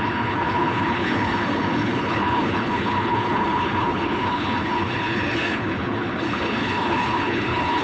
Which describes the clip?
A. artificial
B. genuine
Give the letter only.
A